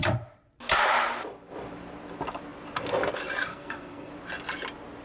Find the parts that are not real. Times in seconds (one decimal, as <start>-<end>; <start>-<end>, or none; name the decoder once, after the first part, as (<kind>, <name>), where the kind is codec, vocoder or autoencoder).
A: 3.5-4.1 (codec, SNAC)